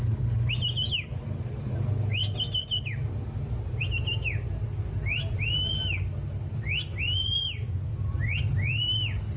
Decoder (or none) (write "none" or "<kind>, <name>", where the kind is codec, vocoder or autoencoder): none